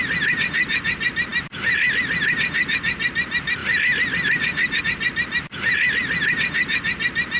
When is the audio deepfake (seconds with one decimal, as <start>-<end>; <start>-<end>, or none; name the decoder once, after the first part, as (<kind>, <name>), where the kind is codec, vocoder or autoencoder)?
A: 3.6-4.8 (vocoder, BigVGAN v2)